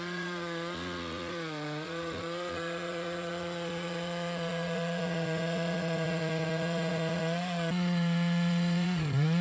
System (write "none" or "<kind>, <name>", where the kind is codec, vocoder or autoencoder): vocoder, Vocos